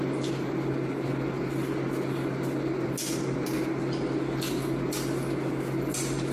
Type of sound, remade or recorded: recorded